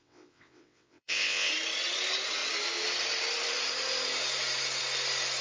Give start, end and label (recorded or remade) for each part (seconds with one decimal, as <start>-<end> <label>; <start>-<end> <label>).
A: 0.0-1.5 remade; 1.5-5.4 recorded